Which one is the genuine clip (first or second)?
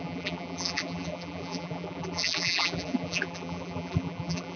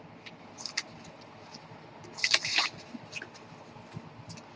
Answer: second